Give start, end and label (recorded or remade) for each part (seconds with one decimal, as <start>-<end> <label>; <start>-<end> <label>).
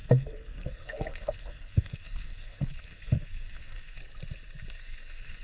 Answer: 0.0-4.0 remade; 4.0-4.8 recorded; 4.8-5.4 remade